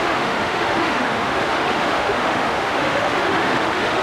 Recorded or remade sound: remade